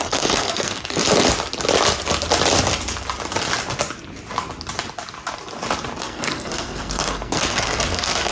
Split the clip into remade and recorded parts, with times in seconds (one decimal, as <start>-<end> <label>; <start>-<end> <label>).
0.0-1.0 remade; 1.0-6.0 recorded; 6.0-8.3 remade